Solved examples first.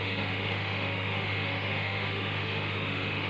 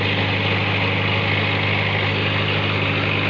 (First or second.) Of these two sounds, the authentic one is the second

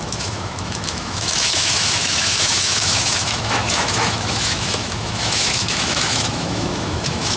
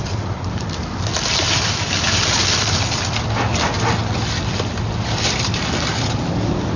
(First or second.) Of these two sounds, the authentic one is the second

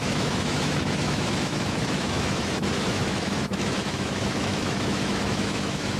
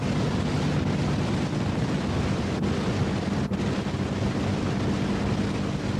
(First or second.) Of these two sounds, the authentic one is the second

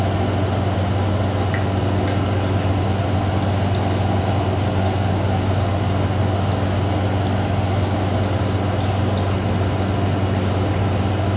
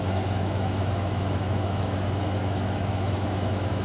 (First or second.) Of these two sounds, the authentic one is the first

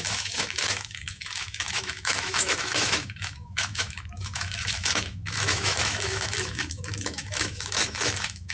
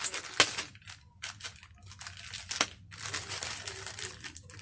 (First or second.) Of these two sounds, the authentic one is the second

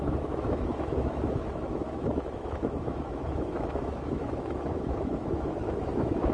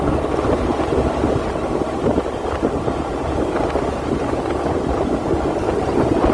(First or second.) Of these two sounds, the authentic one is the second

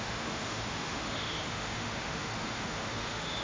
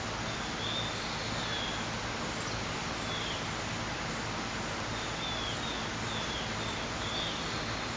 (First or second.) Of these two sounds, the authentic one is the second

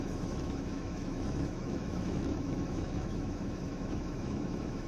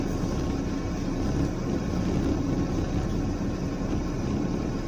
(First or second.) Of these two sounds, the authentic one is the second